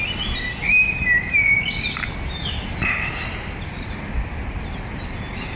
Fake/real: real